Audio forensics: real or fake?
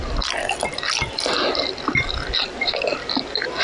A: real